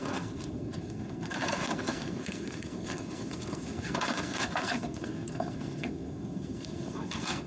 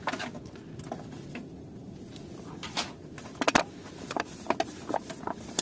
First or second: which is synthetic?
first